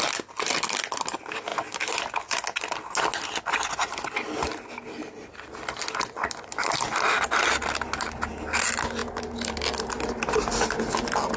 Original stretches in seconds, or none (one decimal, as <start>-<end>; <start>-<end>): 0.0-11.4